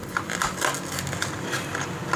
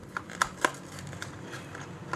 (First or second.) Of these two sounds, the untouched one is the first